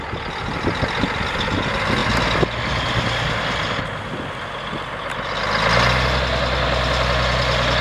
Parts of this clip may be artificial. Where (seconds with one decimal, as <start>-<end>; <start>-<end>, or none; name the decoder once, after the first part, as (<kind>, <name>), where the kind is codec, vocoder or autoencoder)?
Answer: none